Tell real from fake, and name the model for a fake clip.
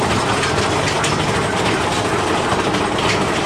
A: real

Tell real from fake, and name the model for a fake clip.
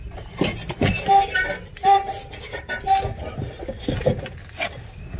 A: real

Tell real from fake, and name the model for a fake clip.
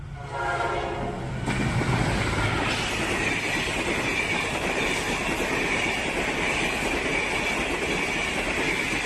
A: real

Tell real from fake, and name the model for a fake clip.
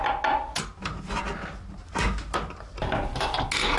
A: real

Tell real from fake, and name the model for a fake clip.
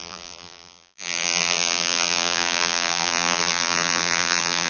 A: fake, vocoder, BigVGAN v2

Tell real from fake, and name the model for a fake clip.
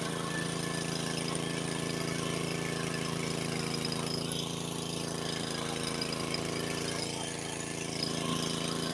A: real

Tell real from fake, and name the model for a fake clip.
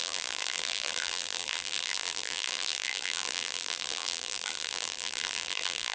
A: fake, vocoder, BigVGAN v2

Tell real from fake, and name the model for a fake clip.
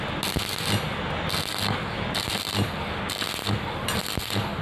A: real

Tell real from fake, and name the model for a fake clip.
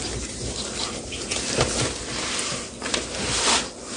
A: real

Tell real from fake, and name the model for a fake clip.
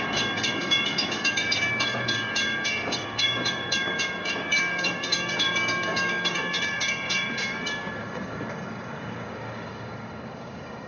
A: fake, codec, DAC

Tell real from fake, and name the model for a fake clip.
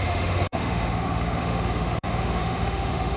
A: fake, autoencoder, DAC-VAE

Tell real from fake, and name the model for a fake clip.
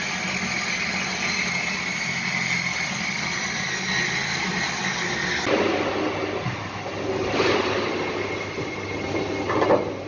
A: real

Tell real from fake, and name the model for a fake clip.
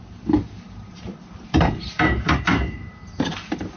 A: fake, vocoder, BigVGAN v2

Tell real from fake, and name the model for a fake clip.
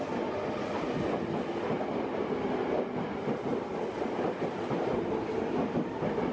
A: real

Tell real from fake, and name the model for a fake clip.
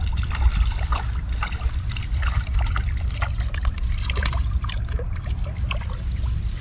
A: fake, vocoder, BigVGAN v2